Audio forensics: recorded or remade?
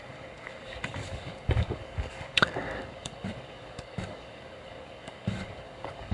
remade